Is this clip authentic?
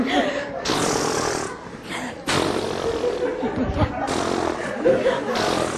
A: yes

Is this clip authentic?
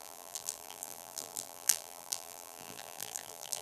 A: no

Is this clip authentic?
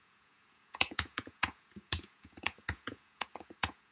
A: no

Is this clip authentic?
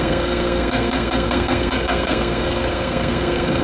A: no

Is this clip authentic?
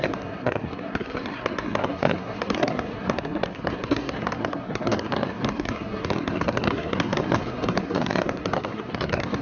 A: no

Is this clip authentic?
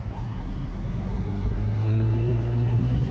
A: no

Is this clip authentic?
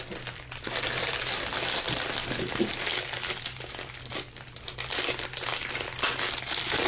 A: yes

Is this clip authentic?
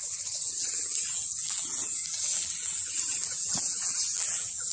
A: no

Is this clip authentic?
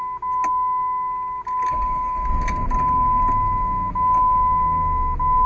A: yes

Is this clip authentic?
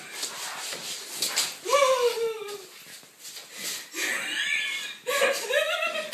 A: yes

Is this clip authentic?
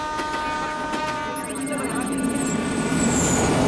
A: yes